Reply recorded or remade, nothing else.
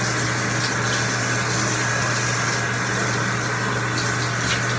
recorded